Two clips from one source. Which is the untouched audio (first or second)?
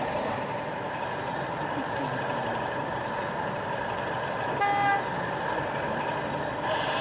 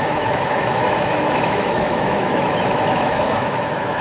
first